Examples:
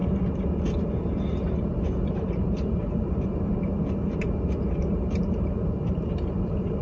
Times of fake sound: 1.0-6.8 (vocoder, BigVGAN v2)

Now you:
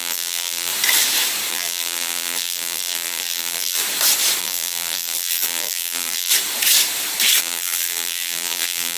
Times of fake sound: 0.0-0.7 (vocoder, BigVGAN v2); 1.5-3.8; 4.4-6.3; 7.4-9.0

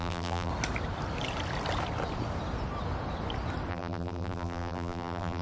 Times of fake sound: 0.0-0.5 (vocoder, BigVGAN v2); 3.7-5.4

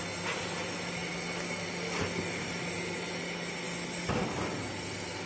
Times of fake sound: none

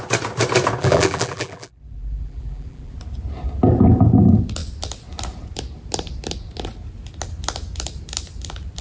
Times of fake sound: 0.8-2.9 (vocoder, BigVGAN v2)

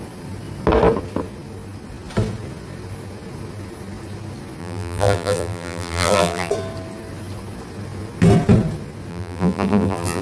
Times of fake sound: 4.6-6.5 (vocoder, BigVGAN v2); 9.1-10.2